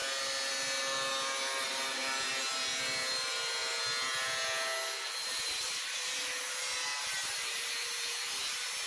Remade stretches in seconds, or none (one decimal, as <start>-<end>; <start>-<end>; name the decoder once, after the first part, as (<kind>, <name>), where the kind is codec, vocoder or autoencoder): none